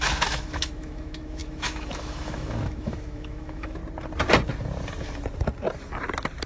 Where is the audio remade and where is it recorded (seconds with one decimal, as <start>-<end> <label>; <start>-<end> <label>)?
0.0-3.8 remade; 3.8-6.5 recorded